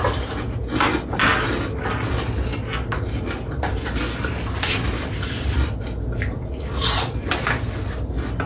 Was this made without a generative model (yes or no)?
yes